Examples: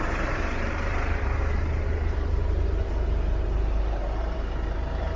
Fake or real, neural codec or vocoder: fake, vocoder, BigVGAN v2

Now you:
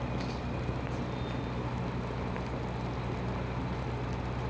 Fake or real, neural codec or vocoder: real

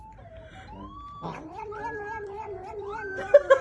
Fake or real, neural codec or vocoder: fake, vocoder, BigVGAN v2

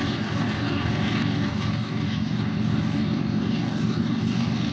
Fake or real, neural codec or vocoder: fake, codec, DAC